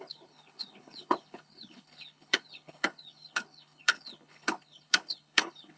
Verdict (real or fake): fake